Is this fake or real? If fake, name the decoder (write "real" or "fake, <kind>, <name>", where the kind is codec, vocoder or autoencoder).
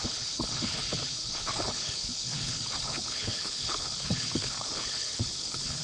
fake, codec, HILCodec